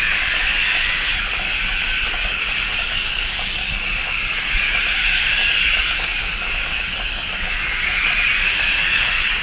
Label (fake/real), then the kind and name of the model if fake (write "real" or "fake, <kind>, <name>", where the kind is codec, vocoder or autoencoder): fake, codec, DAC